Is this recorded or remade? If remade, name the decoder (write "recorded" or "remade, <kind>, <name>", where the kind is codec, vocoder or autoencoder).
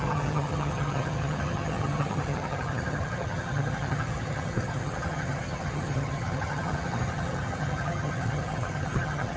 remade, vocoder, HiFi-GAN